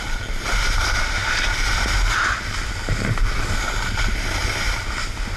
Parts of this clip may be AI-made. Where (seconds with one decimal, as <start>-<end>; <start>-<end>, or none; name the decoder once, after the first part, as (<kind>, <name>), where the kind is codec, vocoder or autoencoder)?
none